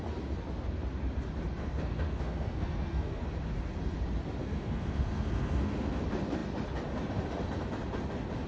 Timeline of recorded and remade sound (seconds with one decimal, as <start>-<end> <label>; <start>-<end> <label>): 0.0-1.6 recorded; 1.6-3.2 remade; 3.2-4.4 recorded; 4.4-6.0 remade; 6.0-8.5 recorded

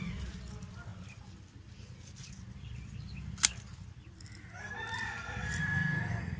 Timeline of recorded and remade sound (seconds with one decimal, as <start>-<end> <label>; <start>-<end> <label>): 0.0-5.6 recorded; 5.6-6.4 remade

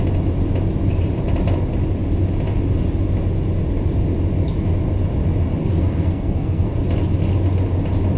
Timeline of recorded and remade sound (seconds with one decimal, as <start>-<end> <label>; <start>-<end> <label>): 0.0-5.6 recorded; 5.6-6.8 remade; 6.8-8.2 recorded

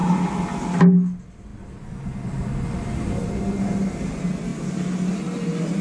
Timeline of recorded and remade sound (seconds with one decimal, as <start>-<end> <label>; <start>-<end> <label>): 0.0-5.8 recorded

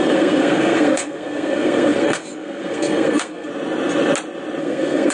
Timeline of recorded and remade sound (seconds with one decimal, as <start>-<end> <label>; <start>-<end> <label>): 0.0-3.5 remade; 3.5-4.6 recorded; 4.6-5.1 remade

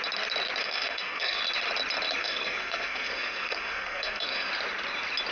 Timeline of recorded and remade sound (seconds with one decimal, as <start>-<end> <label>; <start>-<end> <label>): 0.0-0.6 recorded; 0.6-1.4 remade; 1.4-2.2 recorded; 2.2-4.5 remade; 4.5-5.3 recorded

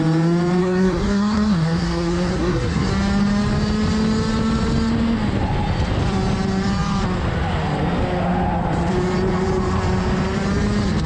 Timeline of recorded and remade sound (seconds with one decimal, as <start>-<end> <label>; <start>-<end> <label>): 0.0-0.6 recorded; 0.6-2.9 remade; 2.9-11.1 recorded